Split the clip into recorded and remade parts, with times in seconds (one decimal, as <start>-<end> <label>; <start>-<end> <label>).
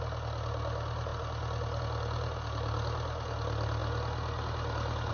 0.0-5.1 recorded